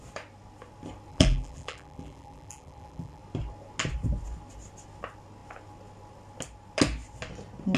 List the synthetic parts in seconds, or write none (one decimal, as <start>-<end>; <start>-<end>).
1.1-3.2